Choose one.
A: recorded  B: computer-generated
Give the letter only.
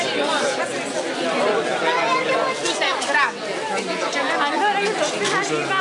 A